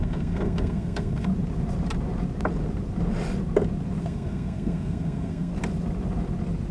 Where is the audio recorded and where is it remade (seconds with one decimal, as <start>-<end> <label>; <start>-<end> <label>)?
0.0-1.3 remade; 1.3-4.0 recorded; 4.0-5.5 remade; 5.5-6.7 recorded